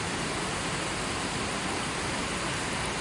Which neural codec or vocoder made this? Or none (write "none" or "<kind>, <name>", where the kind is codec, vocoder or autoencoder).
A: none